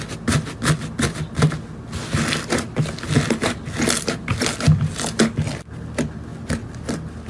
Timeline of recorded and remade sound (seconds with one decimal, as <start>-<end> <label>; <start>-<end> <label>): 0.0-7.3 recorded